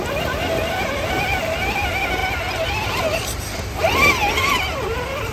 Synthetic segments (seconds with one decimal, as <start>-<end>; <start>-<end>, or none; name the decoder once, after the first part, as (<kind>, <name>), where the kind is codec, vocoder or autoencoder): none